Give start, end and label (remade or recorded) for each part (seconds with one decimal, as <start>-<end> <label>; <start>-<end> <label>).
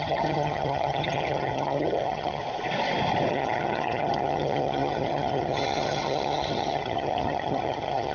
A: 0.0-2.4 remade; 2.4-3.3 recorded; 3.3-8.1 remade